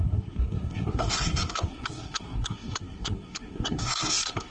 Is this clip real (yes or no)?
no